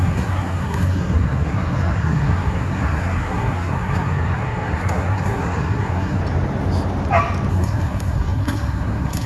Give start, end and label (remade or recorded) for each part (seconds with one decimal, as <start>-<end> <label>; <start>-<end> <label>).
0.0-6.2 remade; 6.2-7.5 recorded; 7.5-9.3 remade